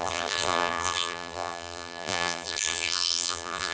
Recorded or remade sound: remade